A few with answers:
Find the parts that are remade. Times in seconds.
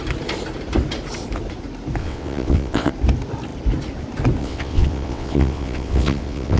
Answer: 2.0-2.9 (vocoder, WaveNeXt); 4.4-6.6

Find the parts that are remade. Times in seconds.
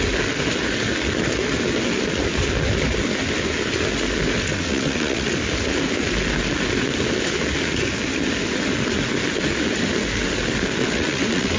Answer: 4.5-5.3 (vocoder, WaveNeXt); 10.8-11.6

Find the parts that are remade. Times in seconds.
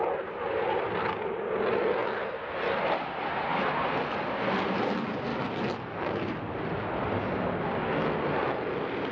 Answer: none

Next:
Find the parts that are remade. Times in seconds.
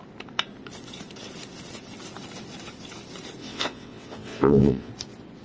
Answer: 3.4-4.9 (vocoder, WaveNeXt)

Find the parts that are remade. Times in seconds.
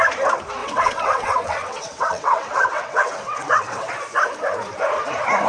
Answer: 0.6-3.9 (vocoder, WaveNeXt)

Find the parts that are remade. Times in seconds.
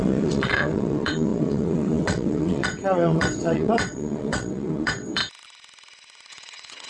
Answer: 0.0-5.2 (vocoder, WaveNeXt); 6.3-6.9